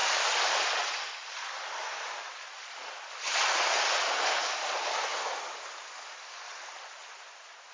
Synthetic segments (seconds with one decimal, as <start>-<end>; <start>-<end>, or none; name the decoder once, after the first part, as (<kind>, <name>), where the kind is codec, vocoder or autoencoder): 0.0-3.8 (vocoder, BigVGAN v2)